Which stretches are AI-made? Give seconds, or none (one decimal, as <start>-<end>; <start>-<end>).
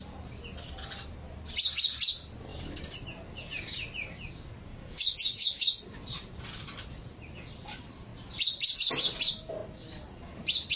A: 4.7-5.8